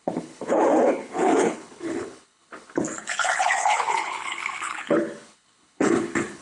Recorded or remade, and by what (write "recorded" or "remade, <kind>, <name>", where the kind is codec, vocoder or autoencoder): remade, codec, HILCodec